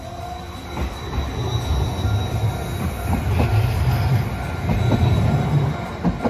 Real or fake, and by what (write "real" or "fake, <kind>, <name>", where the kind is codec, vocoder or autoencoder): real